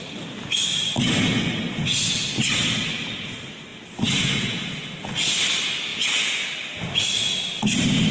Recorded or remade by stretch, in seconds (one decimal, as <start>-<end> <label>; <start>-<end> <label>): 0.0-3.7 recorded; 3.7-4.9 remade; 4.9-5.9 recorded; 5.9-6.5 remade; 6.5-8.1 recorded